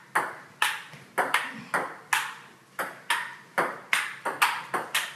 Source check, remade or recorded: recorded